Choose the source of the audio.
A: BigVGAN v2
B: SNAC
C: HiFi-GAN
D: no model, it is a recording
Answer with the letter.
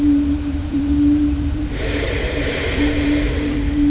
A